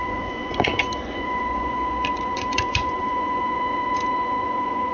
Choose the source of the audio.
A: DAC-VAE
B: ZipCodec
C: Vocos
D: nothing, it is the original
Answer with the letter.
C